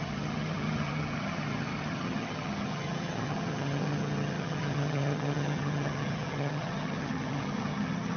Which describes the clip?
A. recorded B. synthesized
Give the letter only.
B